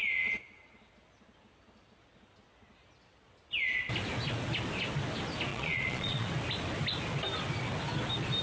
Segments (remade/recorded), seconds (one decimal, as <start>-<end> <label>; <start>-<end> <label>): 0.0-5.5 recorded; 5.5-6.3 remade; 6.3-8.4 recorded